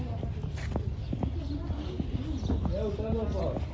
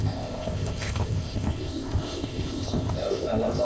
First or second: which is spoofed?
second